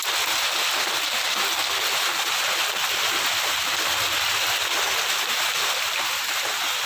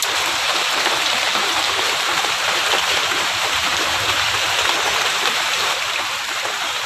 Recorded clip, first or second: first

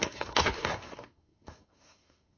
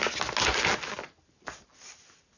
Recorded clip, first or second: second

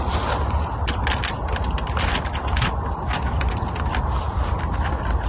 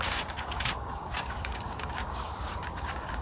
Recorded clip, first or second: first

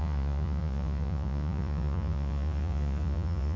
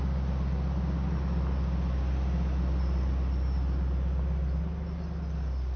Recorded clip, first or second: second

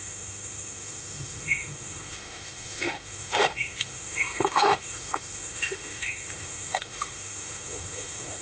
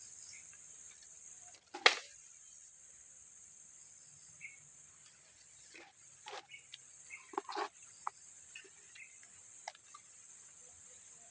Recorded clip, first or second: second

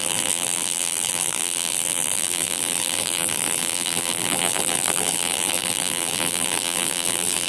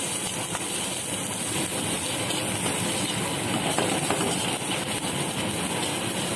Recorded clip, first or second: second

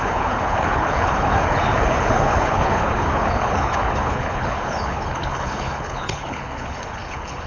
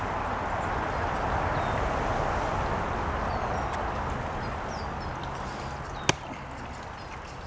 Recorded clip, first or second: second